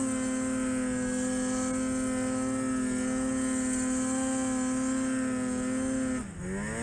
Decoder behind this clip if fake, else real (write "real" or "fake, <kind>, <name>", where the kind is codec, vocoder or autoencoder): real